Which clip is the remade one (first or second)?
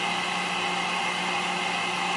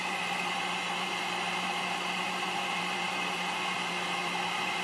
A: second